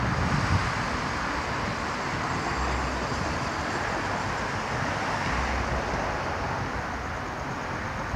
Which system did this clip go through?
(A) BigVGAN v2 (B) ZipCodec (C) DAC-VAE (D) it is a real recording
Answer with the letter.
D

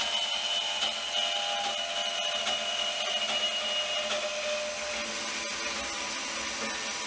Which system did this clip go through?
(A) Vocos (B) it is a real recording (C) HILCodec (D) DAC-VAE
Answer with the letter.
B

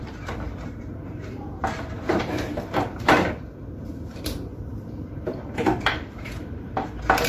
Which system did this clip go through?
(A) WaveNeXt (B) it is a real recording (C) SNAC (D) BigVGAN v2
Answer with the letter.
D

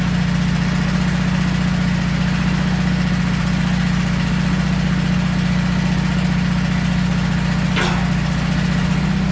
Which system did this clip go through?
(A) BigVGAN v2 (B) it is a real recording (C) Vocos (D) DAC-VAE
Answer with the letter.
B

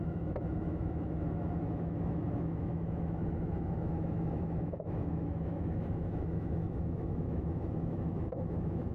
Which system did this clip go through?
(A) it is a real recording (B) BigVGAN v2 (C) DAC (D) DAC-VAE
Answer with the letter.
D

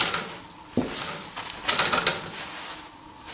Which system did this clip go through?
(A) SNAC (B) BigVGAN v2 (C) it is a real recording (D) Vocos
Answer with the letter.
C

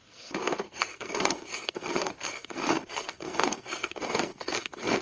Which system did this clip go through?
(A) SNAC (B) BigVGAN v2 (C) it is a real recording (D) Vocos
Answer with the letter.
A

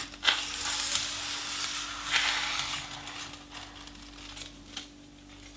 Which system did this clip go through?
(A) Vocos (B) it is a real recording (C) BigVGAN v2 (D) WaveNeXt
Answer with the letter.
B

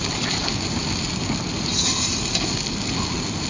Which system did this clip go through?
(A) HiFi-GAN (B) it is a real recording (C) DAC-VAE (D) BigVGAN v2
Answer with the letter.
B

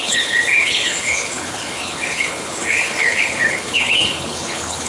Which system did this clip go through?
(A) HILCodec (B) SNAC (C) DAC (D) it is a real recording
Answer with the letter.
A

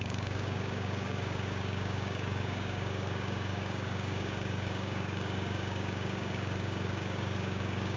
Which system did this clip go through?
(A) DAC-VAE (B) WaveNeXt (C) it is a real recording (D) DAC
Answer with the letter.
D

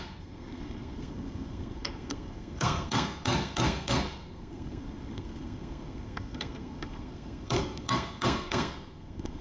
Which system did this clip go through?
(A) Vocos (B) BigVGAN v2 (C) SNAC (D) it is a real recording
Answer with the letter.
C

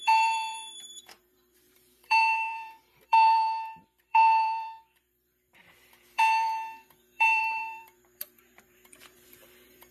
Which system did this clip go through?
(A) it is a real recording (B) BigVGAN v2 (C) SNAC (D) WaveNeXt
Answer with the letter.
B